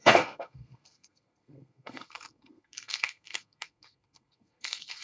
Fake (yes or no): yes